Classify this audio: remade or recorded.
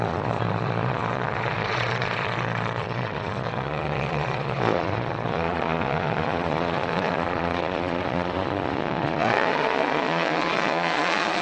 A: remade